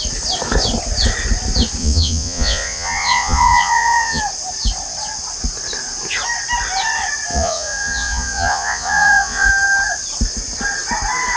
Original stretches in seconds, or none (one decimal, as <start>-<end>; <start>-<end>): 0.0-1.8; 4.2-7.3; 9.5-11.4